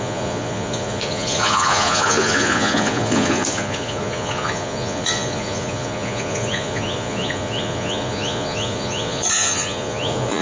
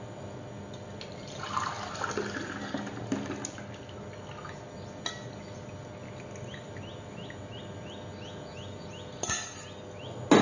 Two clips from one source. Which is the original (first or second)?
second